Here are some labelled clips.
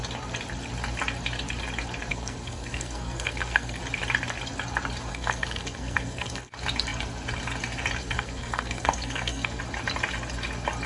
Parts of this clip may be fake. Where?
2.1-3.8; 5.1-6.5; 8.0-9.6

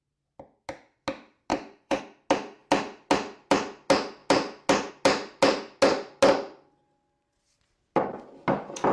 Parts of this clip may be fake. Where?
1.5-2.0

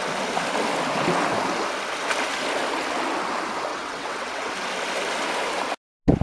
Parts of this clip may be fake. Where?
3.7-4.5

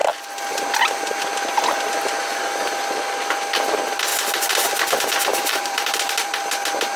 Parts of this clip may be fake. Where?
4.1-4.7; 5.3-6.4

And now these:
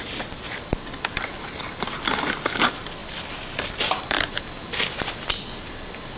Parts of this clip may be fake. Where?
none